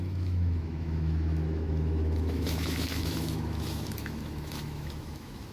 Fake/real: fake